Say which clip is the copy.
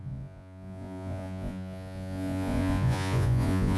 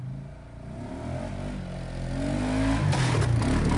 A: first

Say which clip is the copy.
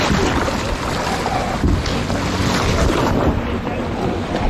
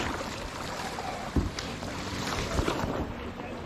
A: second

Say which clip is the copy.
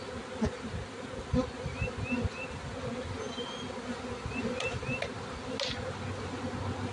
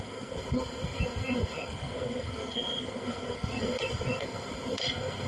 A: second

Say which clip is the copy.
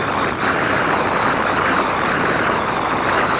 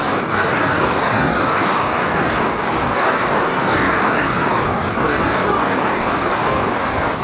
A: second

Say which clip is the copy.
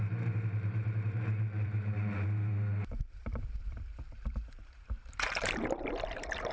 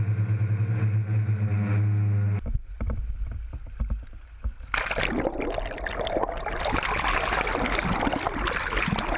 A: first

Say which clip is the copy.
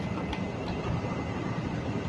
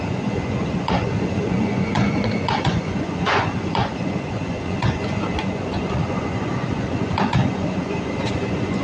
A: second